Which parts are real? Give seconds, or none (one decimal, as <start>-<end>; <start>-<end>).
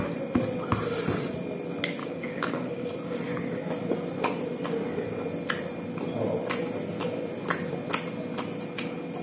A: 0.0-2.0; 2.9-9.2